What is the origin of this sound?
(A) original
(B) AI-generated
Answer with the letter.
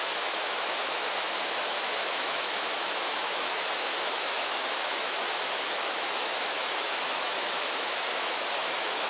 B